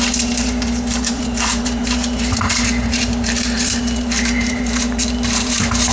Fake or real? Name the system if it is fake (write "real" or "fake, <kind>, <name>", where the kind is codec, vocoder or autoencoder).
fake, vocoder, BigVGAN v2